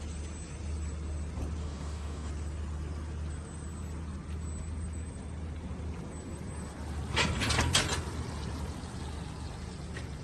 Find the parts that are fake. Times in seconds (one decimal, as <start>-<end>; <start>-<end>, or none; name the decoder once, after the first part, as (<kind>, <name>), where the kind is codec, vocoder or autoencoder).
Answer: 1.6-2.3 (codec, DAC)